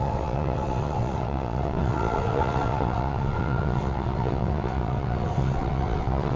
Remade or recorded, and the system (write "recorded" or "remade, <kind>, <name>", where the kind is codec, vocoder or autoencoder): remade, vocoder, WaveNeXt